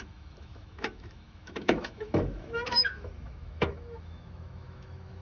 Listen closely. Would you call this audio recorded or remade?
remade